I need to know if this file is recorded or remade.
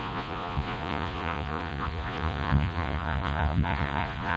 remade